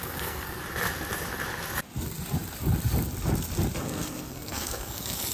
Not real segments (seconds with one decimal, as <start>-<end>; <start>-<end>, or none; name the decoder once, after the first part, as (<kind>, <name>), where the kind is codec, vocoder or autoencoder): 0.0-0.6 (codec, SNAC); 3.8-5.3